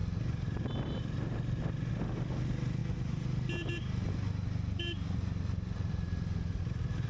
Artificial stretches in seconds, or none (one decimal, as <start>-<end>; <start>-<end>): none